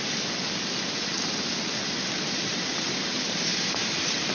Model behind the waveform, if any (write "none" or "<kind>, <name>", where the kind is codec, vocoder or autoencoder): none